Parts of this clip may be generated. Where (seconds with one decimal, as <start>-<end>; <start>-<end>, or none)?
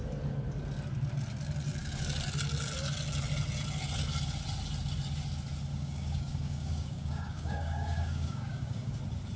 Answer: 5.7-9.0